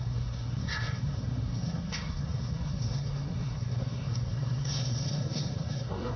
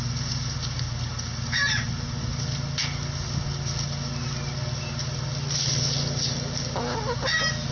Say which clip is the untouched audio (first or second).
second